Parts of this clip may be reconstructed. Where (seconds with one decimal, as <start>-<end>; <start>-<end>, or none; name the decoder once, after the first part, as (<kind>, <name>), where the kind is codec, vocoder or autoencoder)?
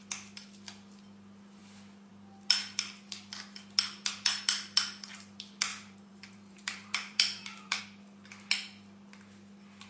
5.7-7.8 (vocoder, BigVGAN v2)